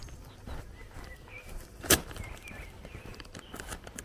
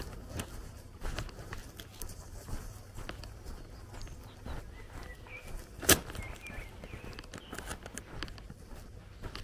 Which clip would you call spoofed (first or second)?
first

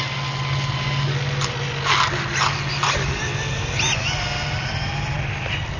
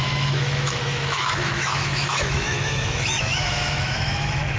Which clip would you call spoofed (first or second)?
second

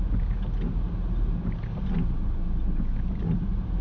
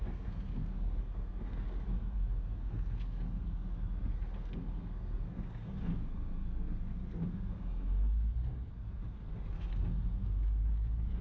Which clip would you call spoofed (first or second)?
second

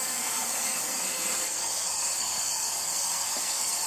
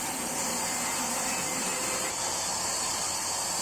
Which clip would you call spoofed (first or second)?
first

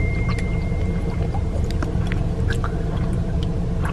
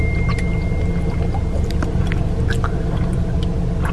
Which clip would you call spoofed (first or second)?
first